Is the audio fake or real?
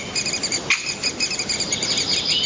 real